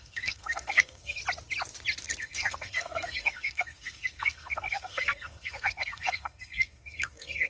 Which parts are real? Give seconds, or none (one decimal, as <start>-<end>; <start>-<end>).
1.2-2.2